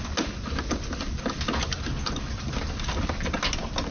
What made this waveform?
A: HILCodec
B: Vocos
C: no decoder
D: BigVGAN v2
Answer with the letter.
C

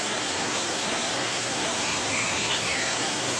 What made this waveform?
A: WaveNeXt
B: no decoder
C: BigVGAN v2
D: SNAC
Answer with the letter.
D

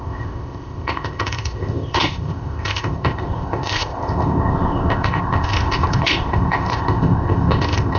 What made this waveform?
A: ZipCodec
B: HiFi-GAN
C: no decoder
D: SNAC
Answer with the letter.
A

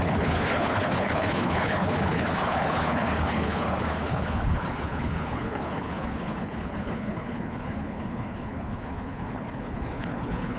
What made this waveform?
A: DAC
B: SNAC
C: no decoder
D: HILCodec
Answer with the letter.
D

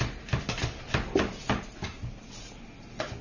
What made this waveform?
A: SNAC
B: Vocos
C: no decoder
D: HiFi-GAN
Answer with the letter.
C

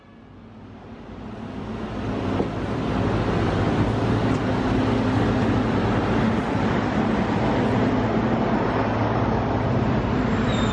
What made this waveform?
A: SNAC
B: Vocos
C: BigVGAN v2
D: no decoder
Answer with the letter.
D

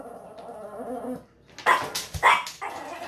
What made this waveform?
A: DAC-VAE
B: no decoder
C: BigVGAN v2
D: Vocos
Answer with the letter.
B